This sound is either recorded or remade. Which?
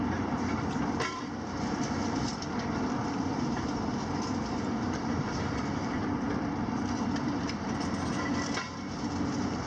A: remade